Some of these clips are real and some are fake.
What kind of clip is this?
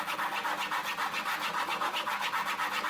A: real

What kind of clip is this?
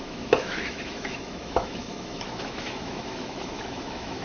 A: fake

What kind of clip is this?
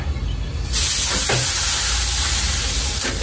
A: real